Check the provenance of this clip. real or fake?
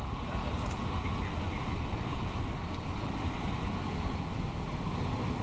real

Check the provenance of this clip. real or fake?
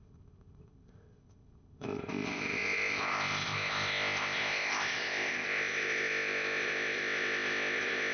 fake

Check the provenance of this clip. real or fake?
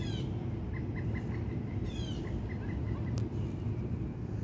real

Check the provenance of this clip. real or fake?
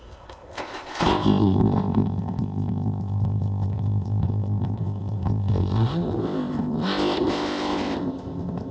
fake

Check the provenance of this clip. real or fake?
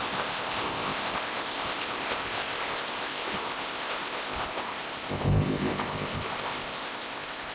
fake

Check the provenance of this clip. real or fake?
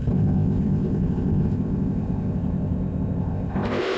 fake